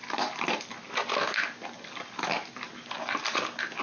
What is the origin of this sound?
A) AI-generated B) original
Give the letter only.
B